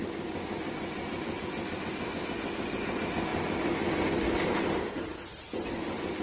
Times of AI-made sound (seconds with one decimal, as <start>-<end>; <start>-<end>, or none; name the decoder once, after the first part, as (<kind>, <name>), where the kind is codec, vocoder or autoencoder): 3.3-4.0 (vocoder, BigVGAN v2); 5.3-6.2